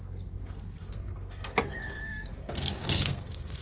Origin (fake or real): fake